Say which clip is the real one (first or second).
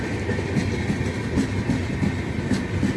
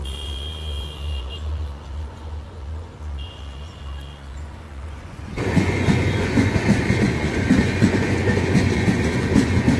first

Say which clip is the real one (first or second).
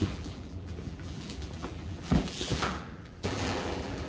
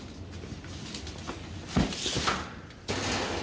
second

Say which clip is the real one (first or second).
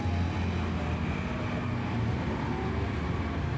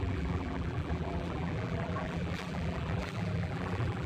first